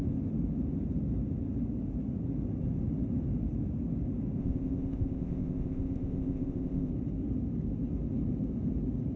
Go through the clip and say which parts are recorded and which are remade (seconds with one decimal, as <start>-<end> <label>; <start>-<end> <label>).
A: 0.0-4.4 recorded; 4.4-6.9 remade; 6.9-9.2 recorded